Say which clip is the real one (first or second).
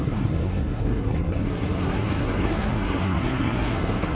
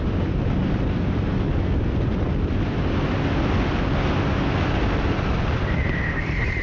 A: second